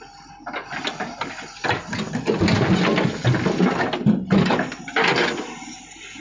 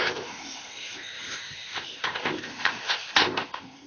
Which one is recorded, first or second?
first